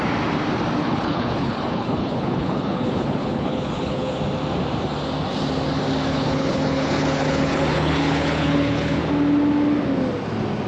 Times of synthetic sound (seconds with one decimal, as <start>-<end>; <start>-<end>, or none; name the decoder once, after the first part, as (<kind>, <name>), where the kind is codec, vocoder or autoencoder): 0.8-4.2 (codec, HILCodec); 6.1-9.0